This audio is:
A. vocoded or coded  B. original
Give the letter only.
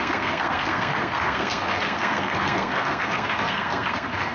A